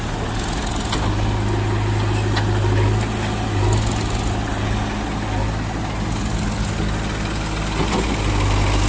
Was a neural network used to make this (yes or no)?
no